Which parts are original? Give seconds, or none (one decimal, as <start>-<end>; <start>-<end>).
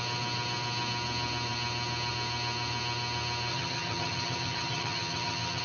0.0-3.5